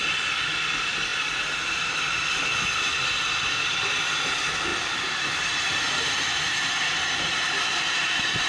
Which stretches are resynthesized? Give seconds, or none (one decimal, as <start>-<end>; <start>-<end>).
1.1-1.8; 4.7-7.8